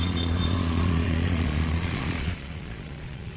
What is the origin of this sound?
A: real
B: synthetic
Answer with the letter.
B